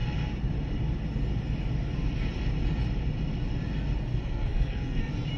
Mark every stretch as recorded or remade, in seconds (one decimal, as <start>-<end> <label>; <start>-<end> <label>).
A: 0.0-4.1 recorded; 4.1-5.0 remade; 5.0-5.4 recorded